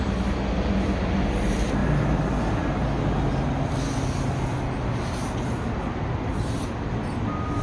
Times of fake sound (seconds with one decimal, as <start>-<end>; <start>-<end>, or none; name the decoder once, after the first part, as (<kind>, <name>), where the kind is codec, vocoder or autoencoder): none